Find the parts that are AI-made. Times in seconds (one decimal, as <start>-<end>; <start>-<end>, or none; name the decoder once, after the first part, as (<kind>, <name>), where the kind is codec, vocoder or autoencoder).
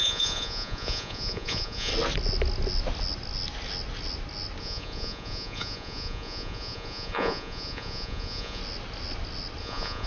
0.0-1.9 (vocoder, Vocos); 4.6-8.6; 9.6-10.1